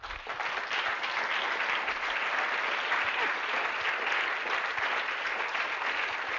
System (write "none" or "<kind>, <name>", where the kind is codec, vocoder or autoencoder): none